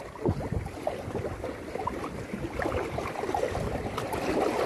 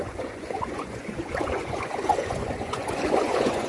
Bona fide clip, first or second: first